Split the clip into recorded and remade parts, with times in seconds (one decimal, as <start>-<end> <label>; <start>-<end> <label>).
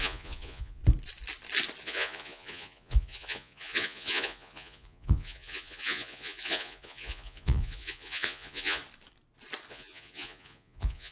0.0-0.8 remade; 0.8-1.8 recorded; 1.8-8.8 remade; 8.8-9.7 recorded; 9.7-11.1 remade